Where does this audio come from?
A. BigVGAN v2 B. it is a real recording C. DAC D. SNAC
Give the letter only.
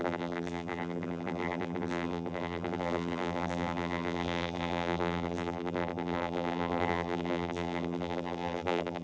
A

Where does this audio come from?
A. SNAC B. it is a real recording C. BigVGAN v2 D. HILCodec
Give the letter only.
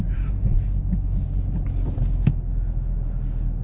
B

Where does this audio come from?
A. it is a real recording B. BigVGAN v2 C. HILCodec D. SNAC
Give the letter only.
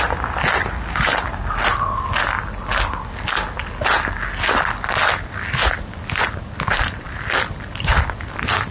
A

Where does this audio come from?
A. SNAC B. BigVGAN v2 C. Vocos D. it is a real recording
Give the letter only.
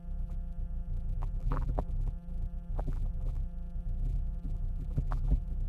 B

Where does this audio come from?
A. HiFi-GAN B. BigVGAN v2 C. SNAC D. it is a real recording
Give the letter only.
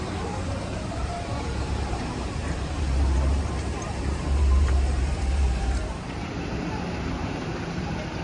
B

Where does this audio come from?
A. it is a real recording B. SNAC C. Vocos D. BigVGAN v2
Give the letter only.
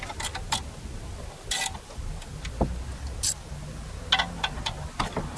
A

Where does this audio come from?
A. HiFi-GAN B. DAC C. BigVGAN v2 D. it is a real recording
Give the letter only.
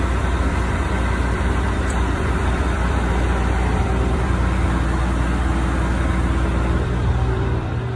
C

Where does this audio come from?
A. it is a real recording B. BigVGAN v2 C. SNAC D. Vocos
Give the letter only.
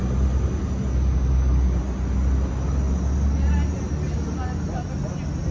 A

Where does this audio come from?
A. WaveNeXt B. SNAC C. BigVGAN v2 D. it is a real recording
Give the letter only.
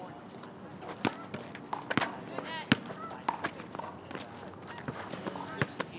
D